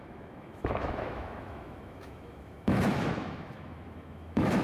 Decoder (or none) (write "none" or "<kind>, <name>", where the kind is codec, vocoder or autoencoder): autoencoder, DAC-VAE